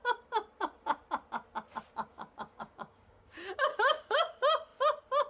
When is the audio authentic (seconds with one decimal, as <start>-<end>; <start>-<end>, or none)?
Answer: 0.0-2.1; 4.3-5.3